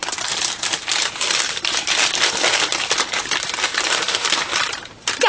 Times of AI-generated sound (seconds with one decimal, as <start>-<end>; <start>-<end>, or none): 0.0-3.2